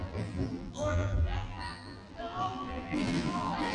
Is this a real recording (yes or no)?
no